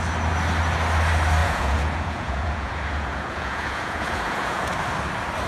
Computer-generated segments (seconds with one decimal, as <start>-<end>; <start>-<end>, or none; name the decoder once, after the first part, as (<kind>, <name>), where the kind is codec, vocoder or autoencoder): 1.4-4.7 (vocoder, Vocos)